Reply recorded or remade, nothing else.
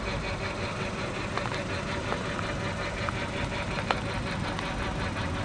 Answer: recorded